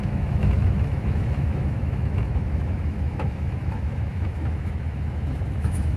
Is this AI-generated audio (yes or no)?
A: yes